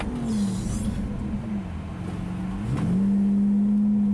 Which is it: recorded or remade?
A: recorded